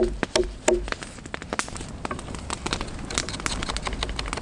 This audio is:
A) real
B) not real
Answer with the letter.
A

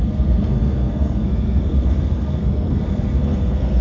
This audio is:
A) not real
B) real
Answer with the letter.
A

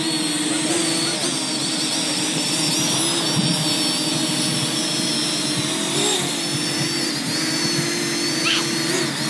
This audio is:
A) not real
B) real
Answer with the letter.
B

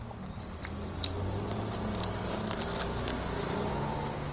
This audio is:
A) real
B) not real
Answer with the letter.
A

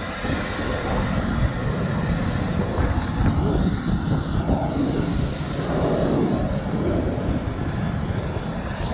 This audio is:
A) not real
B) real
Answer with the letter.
B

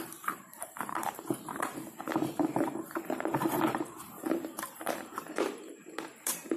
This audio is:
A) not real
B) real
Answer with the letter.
A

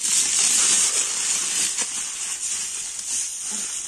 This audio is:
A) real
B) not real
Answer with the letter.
A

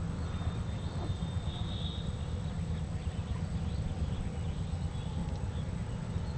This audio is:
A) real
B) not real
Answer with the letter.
A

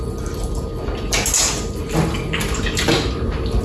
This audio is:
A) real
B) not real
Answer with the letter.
A